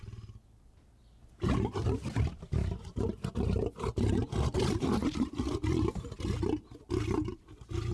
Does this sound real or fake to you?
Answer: real